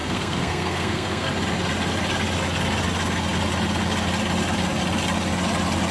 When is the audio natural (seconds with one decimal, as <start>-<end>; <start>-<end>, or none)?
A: 1.3-5.9

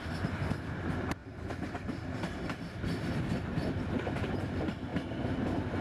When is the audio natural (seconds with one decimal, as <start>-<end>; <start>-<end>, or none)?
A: 0.0-1.2; 4.3-4.9

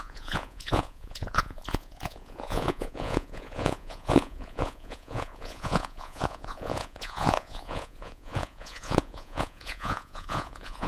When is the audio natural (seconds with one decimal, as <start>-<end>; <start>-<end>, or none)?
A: none

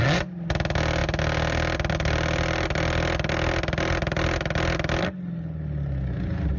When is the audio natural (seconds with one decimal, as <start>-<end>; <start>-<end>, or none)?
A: 0.0-6.6

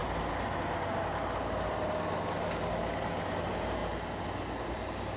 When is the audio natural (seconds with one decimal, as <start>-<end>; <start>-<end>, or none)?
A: 0.0-3.1

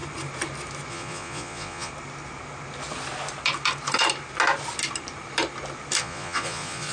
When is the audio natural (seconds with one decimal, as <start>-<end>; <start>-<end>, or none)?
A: 0.0-0.9; 1.9-6.0